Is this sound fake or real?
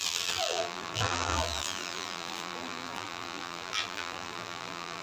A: fake